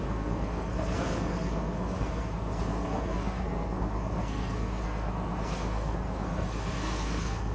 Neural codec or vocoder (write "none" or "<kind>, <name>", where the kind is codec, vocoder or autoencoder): codec, SNAC